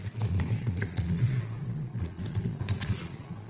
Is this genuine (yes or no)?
no